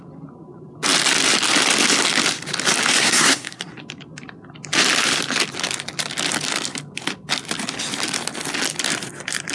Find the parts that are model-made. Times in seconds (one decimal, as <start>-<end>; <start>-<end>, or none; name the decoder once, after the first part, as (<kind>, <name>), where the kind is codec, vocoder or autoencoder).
3.0-3.7 (codec, SNAC)